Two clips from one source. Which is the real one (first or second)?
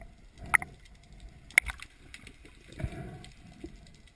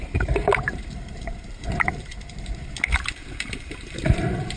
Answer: first